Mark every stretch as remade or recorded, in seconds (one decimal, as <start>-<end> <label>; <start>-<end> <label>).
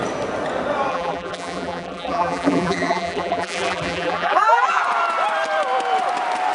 0.0-0.9 recorded; 0.9-4.8 remade; 4.8-6.5 recorded